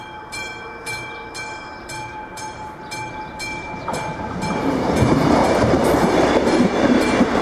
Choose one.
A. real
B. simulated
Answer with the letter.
B